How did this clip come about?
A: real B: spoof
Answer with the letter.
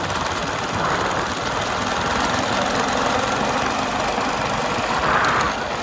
A